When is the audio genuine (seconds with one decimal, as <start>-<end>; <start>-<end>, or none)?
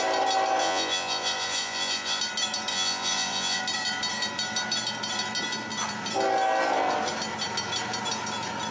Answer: 0.0-0.6; 2.2-2.7; 3.6-8.7